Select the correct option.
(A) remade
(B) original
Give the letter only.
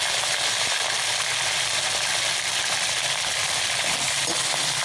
B